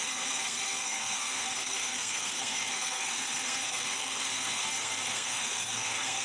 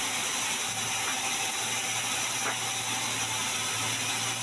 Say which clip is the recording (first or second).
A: second